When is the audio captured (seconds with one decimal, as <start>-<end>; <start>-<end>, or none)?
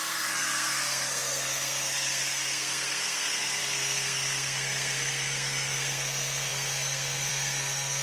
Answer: none